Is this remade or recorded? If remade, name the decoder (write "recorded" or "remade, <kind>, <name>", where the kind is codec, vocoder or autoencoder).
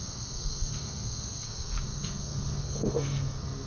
remade, codec, SNAC